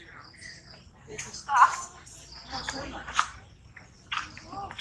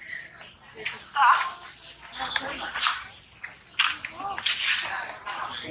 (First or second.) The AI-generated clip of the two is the first